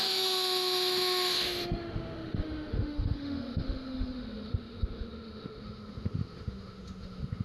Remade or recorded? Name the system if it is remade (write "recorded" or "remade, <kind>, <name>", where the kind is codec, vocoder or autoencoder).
remade, autoencoder, DAC-VAE